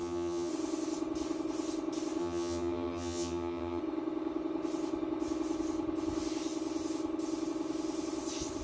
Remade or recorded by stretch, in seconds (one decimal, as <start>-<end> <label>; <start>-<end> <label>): 0.0-0.5 remade; 0.5-2.2 recorded; 2.2-3.8 remade; 3.8-8.6 recorded